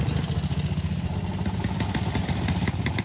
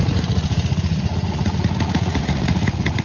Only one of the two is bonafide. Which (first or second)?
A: first